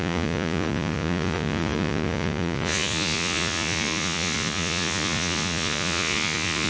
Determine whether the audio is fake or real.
fake